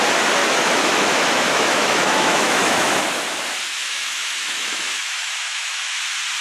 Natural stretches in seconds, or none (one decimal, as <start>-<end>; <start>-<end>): 0.0-0.4; 3.0-3.7; 6.0-6.4